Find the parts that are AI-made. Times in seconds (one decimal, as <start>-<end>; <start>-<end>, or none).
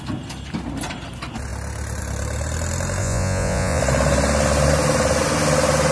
3.0-3.8